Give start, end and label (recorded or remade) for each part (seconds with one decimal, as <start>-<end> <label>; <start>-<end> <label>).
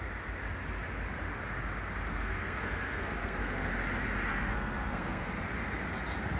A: 0.0-2.1 recorded; 2.1-3.7 remade; 3.7-4.3 recorded; 4.3-5.4 remade; 5.4-6.4 recorded